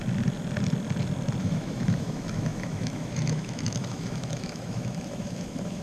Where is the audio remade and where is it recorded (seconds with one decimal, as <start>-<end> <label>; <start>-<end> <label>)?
0.0-1.4 recorded; 1.4-5.8 remade